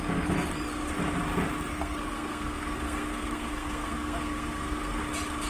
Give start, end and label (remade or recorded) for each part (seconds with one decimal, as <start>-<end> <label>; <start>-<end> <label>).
0.0-1.7 recorded; 1.7-5.0 remade; 5.0-5.5 recorded